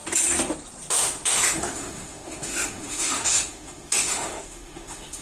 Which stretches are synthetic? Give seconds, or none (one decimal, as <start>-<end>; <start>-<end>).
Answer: 0.9-5.2